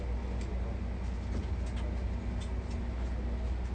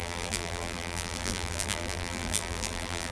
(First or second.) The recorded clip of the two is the first